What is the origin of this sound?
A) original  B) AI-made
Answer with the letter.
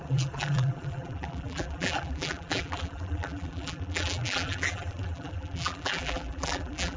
B